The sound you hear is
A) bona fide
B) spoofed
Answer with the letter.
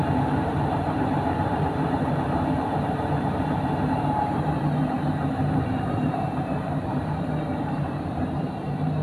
B